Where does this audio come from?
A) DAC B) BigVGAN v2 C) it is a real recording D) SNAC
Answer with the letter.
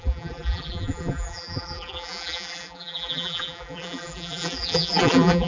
B